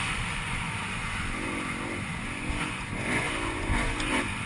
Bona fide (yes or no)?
no